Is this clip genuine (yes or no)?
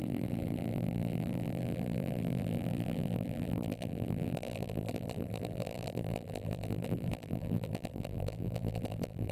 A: no